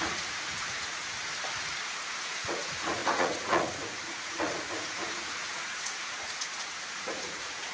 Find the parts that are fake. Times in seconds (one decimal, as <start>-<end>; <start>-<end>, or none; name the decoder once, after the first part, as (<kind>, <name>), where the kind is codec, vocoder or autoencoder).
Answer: 0.0-1.0 (vocoder, Vocos); 1.7-7.7